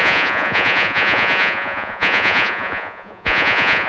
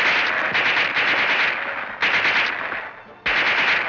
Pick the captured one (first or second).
second